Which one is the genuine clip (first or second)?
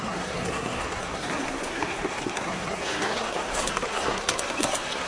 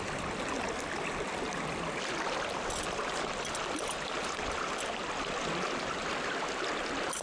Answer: second